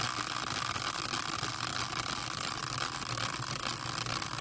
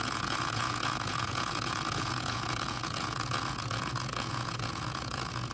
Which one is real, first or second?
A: first